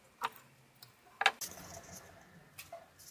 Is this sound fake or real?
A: real